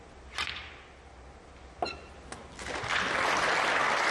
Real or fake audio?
real